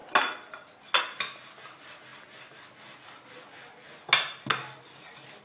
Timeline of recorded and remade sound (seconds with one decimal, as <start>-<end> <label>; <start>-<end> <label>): 0.0-5.4 recorded